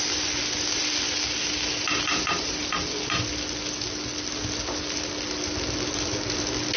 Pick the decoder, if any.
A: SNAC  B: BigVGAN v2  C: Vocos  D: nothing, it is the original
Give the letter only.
D